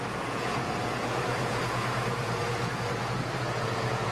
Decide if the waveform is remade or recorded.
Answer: remade